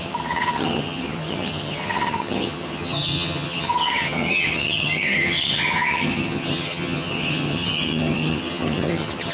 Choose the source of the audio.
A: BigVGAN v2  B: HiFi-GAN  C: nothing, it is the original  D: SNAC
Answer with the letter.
B